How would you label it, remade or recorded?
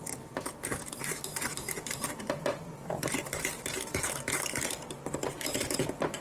remade